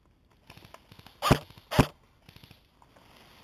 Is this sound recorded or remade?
recorded